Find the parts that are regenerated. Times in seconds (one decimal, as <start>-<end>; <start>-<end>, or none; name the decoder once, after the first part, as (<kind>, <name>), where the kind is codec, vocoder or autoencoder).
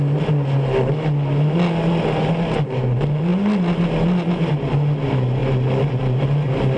none